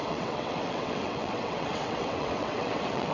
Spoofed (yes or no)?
yes